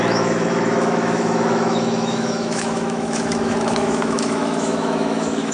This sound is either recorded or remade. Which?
remade